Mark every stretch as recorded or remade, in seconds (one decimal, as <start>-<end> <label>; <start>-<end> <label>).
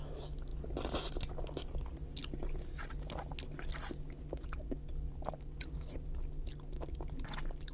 0.0-7.7 recorded